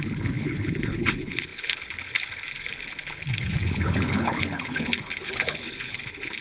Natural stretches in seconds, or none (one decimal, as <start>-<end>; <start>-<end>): none